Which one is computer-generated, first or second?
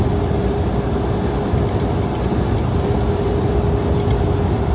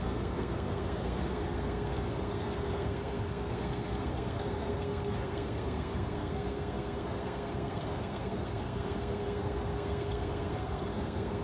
second